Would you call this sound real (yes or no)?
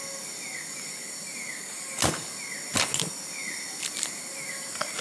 yes